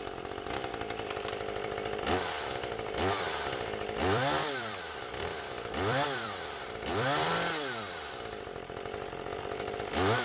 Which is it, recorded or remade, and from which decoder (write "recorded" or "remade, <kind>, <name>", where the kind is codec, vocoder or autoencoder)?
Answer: remade, vocoder, BigVGAN v2